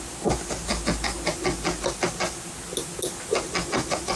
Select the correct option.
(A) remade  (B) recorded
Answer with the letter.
B